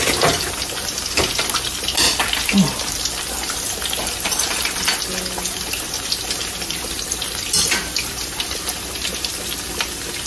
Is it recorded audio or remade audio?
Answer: recorded